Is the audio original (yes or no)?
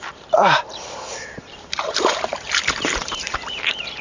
no